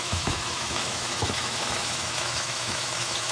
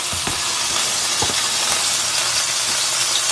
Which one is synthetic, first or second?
first